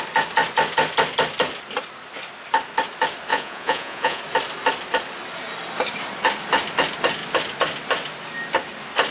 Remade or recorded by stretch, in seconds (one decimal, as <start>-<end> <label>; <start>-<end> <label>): 0.0-3.3 recorded; 3.3-4.2 remade; 4.2-9.1 recorded